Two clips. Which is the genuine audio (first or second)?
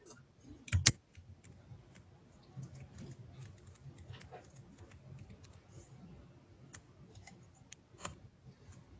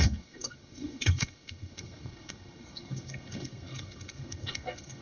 first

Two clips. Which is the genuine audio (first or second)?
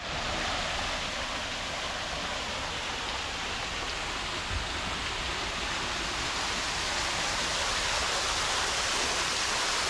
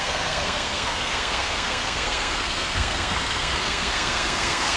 first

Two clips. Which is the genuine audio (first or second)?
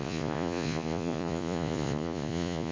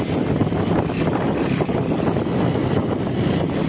second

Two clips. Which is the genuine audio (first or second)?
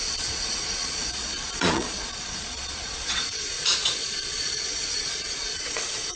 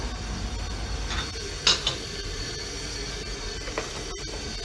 second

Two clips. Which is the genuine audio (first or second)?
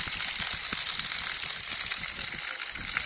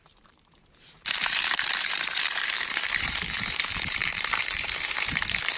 first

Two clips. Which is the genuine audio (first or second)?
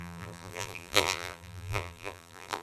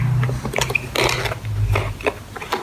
second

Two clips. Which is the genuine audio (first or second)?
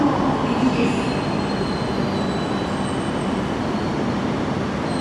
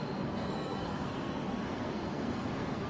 first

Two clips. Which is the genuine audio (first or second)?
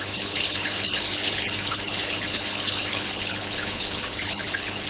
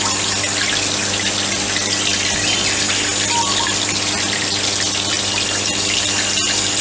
second